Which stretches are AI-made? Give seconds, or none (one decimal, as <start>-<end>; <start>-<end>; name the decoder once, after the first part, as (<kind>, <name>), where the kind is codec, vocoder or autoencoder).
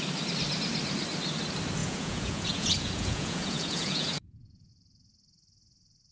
1.8-4.7 (vocoder, Vocos)